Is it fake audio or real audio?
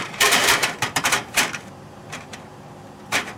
fake